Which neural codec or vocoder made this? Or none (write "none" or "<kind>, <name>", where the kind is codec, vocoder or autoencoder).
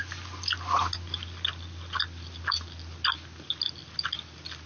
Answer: none